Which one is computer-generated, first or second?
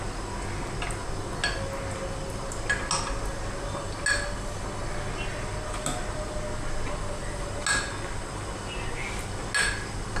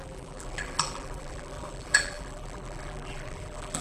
second